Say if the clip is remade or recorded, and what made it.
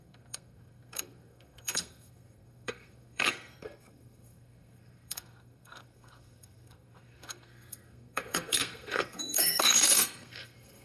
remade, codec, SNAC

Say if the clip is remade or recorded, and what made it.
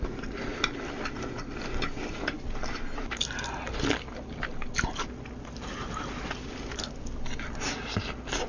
recorded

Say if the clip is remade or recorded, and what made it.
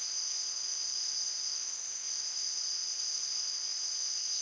remade, codec, ZipCodec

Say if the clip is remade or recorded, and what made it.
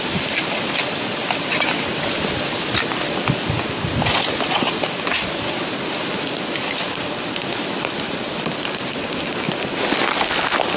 recorded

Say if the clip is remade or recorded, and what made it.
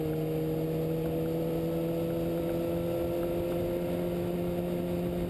recorded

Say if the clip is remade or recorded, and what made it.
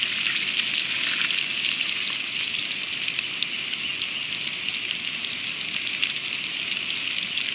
recorded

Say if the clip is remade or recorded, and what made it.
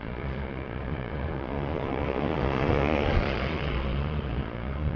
remade, vocoder, Vocos